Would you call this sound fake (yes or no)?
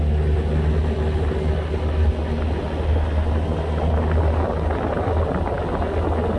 no